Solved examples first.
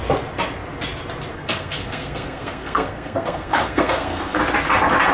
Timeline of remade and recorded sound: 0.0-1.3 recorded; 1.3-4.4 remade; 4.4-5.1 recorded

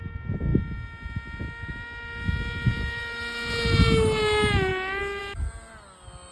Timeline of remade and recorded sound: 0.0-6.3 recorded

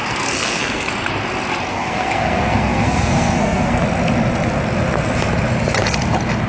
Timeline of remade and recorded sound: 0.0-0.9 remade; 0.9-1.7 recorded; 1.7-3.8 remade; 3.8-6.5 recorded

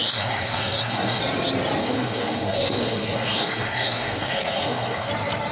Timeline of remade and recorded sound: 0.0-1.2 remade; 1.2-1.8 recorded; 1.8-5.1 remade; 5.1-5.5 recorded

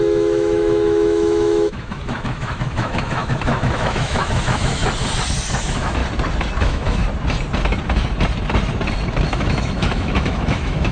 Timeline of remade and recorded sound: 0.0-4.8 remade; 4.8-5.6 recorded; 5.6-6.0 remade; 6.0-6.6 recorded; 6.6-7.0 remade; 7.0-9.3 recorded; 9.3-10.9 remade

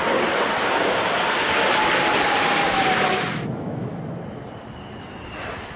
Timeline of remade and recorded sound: 0.0-3.1 recorded; 3.1-4.0 remade; 4.0-5.8 recorded

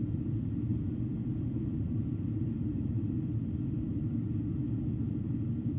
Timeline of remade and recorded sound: 0.0-0.7 recorded; 0.7-3.2 remade; 3.2-5.8 recorded

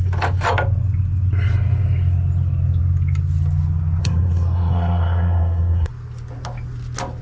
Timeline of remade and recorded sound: 0.0-4.0 recorded; 4.0-5.9 remade; 5.9-7.2 recorded